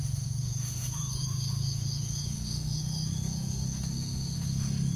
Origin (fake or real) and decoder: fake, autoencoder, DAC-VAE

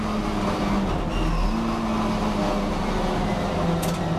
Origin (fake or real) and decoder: real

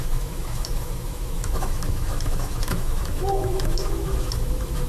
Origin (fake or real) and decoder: fake, autoencoder, DAC-VAE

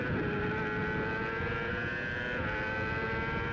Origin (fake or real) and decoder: real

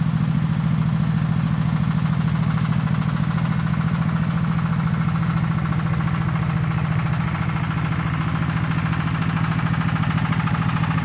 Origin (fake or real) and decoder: real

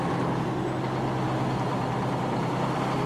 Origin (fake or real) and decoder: real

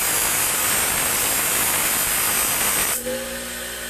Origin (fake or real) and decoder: real